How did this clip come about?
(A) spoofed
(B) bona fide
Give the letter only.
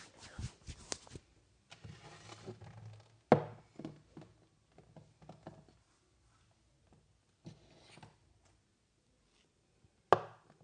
B